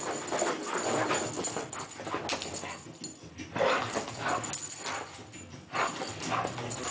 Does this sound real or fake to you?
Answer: real